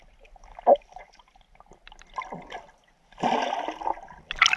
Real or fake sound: real